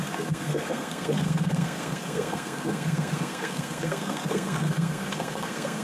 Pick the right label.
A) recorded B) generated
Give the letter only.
B